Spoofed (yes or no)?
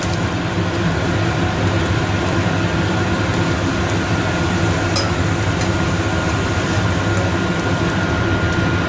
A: no